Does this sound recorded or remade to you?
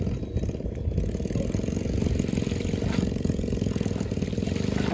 recorded